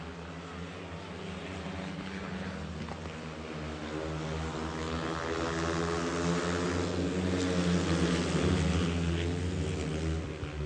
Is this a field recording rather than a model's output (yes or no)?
yes